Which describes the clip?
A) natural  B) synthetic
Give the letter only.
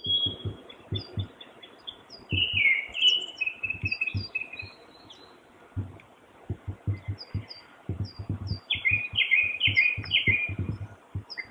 B